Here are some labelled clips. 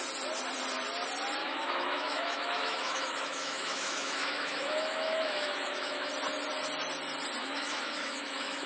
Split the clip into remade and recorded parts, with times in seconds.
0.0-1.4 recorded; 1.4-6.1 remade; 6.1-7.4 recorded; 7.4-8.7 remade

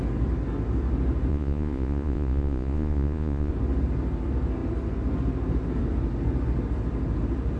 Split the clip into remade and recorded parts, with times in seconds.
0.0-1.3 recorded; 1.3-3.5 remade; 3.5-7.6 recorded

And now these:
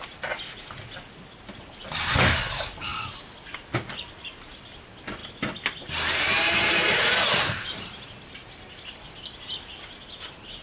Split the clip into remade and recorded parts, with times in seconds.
0.0-10.6 recorded